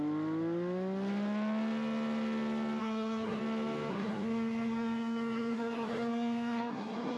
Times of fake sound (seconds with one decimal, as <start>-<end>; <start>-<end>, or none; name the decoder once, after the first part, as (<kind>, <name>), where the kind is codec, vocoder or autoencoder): 2.8-3.4 (codec, SNAC); 3.9-7.2